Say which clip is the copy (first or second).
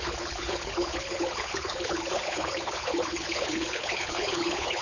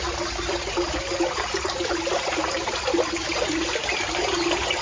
first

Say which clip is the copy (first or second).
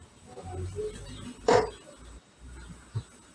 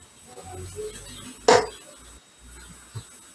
first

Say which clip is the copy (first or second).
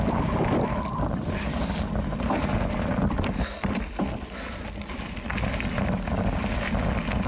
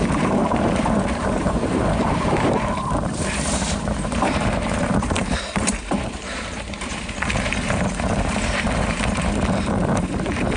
second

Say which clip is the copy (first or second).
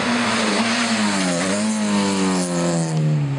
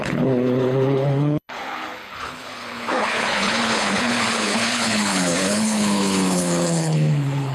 second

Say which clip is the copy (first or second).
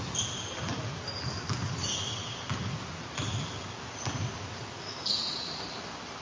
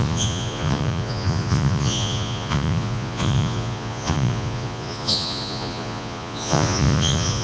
second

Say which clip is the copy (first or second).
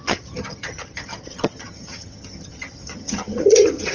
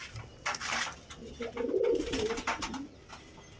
first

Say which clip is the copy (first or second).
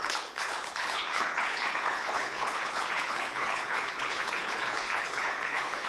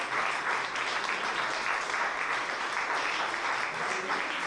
first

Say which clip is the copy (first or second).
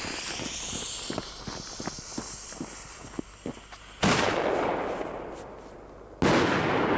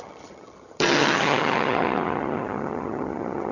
second